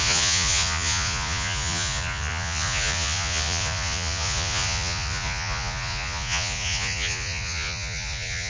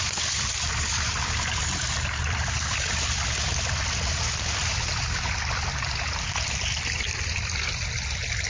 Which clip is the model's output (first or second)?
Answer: first